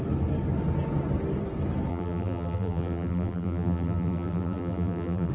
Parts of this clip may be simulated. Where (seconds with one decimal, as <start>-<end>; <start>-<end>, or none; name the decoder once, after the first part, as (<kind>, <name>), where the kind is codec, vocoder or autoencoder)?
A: 1.9-5.3 (vocoder, BigVGAN v2)